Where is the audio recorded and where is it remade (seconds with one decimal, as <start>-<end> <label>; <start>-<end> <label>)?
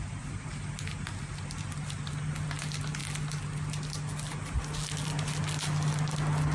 0.0-6.5 recorded